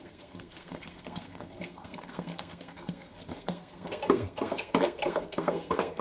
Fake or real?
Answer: fake